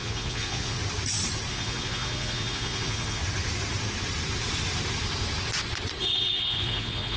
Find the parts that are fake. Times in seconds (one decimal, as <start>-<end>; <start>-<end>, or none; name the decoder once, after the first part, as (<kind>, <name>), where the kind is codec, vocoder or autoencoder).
0.0-0.8 (vocoder, Vocos); 1.5-3.2; 6.0-7.2